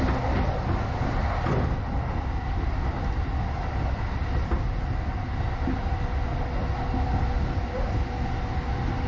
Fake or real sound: real